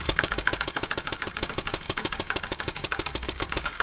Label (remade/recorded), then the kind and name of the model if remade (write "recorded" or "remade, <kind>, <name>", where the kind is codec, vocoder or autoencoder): remade, codec, DAC